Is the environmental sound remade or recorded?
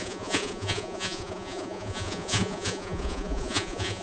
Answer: remade